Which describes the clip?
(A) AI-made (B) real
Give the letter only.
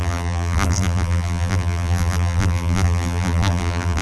A